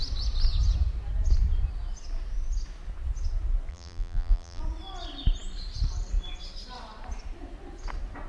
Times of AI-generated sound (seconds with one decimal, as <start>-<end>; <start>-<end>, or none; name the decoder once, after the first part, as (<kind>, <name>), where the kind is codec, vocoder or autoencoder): 3.7-4.6 (vocoder, BigVGAN v2)